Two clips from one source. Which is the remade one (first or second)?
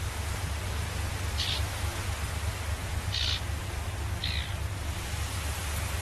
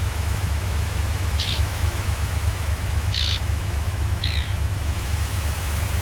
second